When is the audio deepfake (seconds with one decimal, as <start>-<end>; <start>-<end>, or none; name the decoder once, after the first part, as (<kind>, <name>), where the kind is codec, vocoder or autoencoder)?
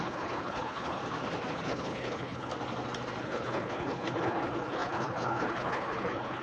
0.0-1.0 (codec, HILCodec); 1.5-2.5; 3.2-6.4